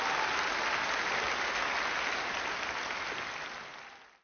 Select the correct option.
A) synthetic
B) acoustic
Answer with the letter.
B